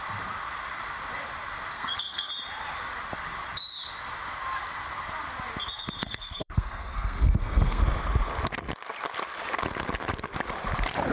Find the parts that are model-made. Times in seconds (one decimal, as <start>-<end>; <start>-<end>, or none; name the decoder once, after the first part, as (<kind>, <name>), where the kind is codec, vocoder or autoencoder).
1.7-2.3 (codec, SNAC); 6.0-7.8